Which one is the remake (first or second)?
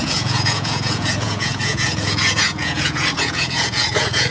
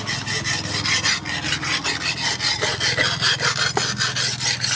first